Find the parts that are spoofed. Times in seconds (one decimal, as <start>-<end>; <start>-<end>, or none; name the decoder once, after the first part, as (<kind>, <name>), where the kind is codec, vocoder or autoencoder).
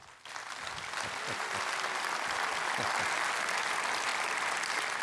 4.1-5.0 (vocoder, BigVGAN v2)